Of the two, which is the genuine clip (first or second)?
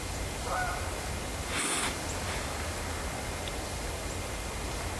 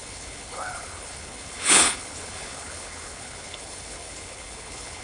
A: first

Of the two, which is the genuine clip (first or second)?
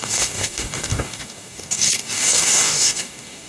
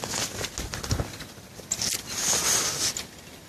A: second